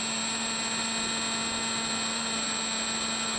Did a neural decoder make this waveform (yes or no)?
no